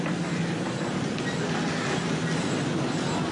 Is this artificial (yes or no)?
no